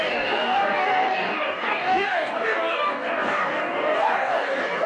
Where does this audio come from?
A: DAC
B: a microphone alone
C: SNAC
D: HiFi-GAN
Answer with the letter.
A